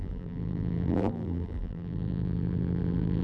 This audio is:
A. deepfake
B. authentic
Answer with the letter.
A